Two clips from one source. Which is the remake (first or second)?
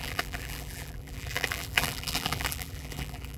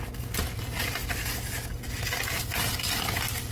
first